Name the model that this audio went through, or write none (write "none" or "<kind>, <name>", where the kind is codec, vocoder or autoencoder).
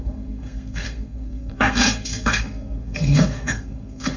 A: codec, SNAC